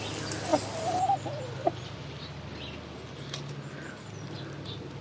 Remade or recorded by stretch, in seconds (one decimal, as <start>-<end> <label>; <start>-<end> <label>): 0.0-5.0 recorded